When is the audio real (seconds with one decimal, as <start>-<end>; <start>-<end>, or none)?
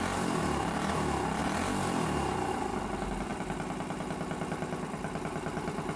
0.0-6.0